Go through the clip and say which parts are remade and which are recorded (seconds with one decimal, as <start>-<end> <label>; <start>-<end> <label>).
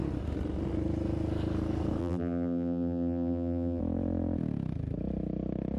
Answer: 0.0-2.0 recorded; 2.0-3.8 remade; 3.8-5.8 recorded